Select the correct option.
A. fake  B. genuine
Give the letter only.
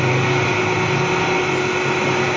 B